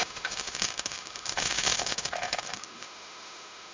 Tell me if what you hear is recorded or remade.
remade